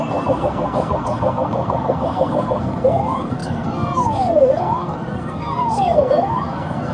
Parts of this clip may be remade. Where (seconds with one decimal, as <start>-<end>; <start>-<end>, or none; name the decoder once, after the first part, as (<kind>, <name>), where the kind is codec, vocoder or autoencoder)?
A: 0.0-6.9 (codec, SNAC)